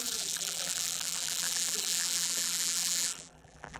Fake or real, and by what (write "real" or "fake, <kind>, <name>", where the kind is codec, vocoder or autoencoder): fake, vocoder, BigVGAN v2